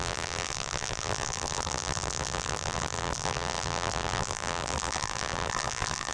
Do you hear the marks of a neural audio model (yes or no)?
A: yes